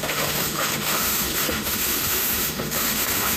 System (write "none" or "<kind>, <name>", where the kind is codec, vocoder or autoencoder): autoencoder, DAC-VAE